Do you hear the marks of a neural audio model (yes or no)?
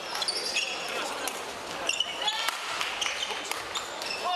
no